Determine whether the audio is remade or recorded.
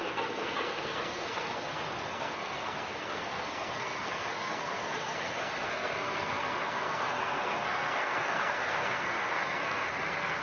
remade